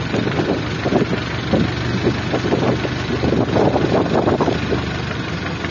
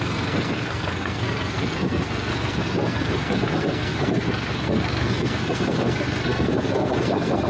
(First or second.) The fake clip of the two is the second